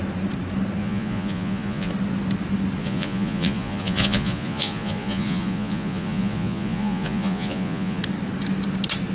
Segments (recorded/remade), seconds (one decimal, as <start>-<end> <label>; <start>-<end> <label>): 0.0-0.8 recorded; 0.8-1.9 remade; 1.9-2.8 recorded; 2.8-8.0 remade; 8.0-9.1 recorded